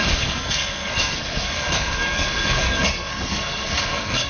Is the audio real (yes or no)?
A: no